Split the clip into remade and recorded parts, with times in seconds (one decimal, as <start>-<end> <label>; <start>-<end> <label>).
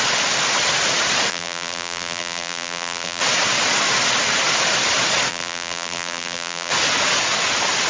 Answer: 0.0-1.3 recorded; 1.3-3.2 remade; 3.2-5.3 recorded; 5.3-6.7 remade; 6.7-7.9 recorded